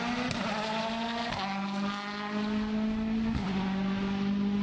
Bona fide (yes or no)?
yes